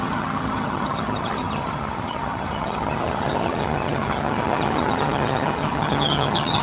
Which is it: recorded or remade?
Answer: remade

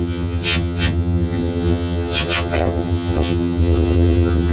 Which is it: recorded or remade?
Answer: remade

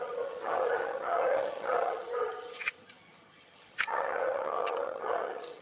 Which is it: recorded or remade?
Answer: remade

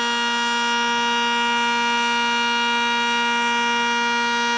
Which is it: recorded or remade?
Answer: recorded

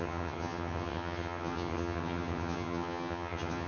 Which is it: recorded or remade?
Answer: remade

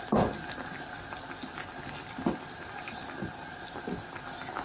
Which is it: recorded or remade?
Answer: recorded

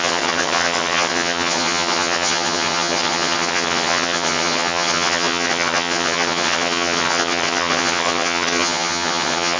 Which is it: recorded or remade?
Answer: remade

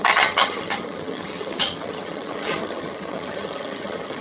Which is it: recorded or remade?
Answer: remade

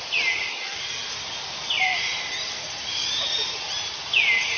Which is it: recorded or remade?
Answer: recorded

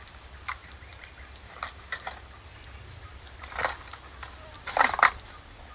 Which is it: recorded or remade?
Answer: recorded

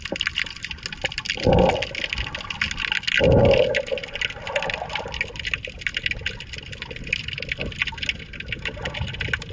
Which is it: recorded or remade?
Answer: recorded